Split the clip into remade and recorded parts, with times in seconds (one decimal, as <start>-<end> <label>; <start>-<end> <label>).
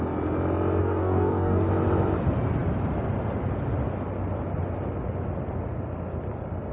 0.0-0.8 recorded; 0.8-1.7 remade; 1.7-6.7 recorded